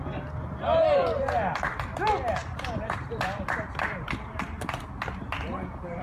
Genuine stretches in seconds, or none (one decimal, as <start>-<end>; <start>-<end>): 0.0-2.4